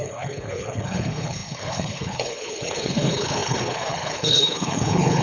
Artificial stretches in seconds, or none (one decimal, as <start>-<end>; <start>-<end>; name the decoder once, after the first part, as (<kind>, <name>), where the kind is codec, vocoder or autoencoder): 0.0-5.2 (codec, HILCodec)